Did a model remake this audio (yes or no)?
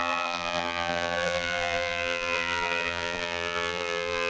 yes